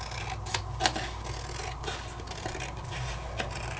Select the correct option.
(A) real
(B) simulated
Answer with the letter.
A